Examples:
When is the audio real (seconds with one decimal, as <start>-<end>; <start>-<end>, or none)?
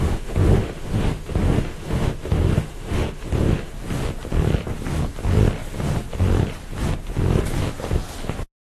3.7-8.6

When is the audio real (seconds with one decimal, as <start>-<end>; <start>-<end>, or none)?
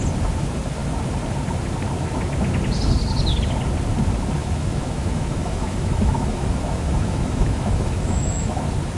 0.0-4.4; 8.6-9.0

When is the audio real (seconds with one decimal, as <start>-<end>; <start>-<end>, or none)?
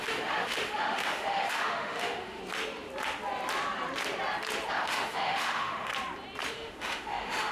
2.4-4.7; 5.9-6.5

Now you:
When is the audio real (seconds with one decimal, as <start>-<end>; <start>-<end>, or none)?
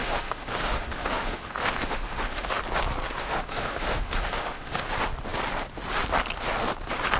2.6-3.2; 4.8-7.2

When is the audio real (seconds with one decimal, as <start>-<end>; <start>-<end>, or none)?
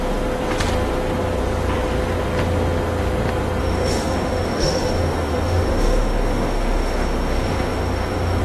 0.0-3.6